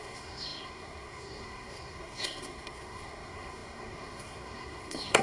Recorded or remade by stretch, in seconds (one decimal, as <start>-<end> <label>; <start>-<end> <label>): 0.0-5.2 remade